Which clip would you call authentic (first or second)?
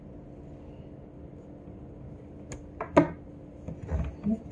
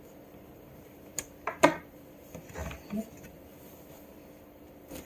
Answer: first